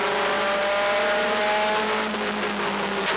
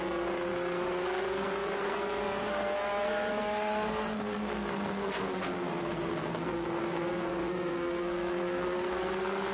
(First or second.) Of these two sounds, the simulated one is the second